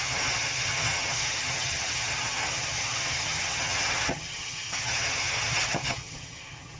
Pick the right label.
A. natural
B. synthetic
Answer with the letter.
B